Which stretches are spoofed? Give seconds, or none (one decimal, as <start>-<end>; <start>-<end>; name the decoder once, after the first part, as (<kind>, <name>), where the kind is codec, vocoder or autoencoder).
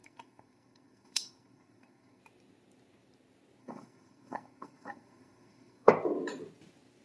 0.0-2.2 (codec, SNAC); 3.6-5.9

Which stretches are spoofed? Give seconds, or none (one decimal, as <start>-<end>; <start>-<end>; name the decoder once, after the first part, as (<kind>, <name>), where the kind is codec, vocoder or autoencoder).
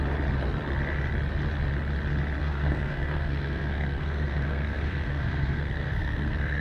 2.4-6.6 (codec, SNAC)